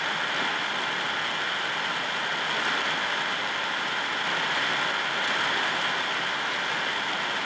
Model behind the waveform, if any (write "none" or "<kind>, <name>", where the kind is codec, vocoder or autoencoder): none